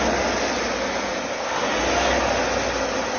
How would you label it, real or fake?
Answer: real